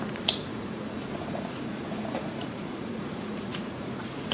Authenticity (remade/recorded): remade